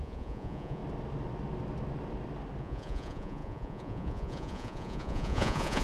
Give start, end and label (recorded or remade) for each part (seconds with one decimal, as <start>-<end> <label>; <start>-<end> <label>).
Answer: 0.0-0.8 remade; 0.8-2.6 recorded; 2.6-5.8 remade